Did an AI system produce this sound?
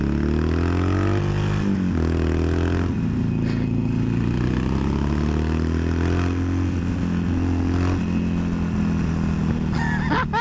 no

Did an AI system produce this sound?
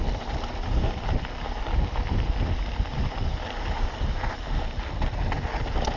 no